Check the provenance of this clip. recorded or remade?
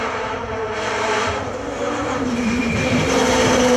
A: remade